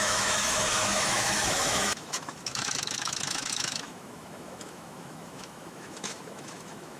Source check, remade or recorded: remade